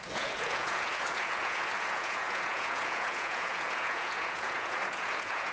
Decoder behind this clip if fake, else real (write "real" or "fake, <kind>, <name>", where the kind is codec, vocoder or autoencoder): fake, vocoder, Vocos